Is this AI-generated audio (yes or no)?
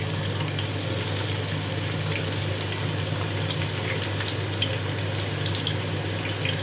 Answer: no